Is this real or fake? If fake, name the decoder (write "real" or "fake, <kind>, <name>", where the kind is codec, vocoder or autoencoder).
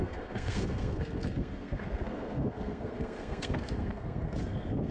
fake, codec, SNAC